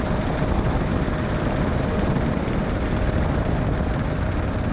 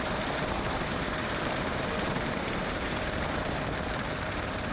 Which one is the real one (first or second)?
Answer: first